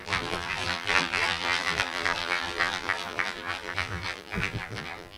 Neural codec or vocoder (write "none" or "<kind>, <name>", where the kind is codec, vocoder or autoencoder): vocoder, BigVGAN v2